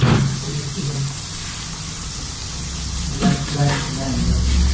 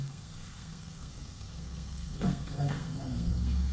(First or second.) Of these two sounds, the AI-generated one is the second